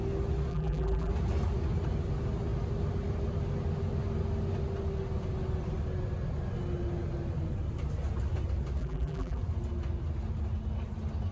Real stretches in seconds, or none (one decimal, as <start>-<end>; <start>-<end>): 0.0-0.5; 1.1-8.8; 9.4-11.3